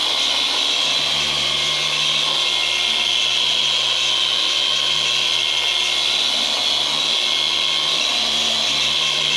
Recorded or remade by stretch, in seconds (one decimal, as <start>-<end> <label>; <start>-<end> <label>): 0.0-1.0 remade; 1.0-9.4 recorded